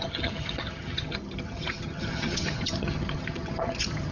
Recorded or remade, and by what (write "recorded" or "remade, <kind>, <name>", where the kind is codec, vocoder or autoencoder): remade, vocoder, HiFi-GAN